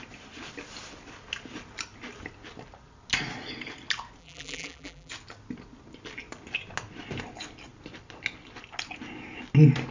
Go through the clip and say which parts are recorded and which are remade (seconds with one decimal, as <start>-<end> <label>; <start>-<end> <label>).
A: 0.0-4.2 recorded; 4.2-5.1 remade; 5.1-9.9 recorded